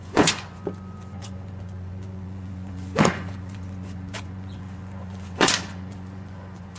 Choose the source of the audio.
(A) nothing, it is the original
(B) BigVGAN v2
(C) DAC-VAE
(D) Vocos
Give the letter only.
D